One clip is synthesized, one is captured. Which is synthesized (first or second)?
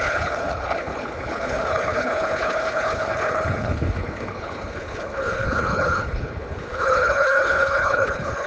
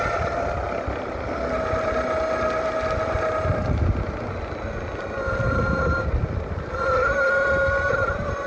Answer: first